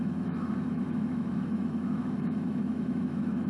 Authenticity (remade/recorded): remade